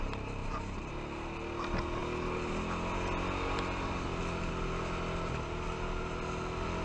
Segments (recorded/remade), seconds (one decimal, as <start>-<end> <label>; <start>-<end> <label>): 0.0-0.4 recorded; 0.4-0.9 remade; 0.9-6.8 recorded